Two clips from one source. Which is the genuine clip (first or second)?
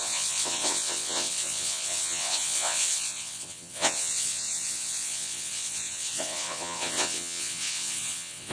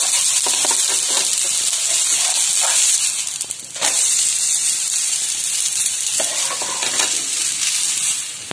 second